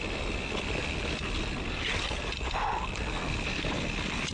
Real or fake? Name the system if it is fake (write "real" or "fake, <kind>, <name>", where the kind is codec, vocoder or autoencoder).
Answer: real